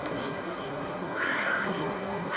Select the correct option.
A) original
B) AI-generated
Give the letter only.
B